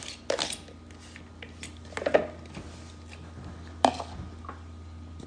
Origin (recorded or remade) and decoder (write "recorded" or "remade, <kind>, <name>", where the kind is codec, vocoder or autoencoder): recorded